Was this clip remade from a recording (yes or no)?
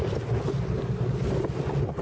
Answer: no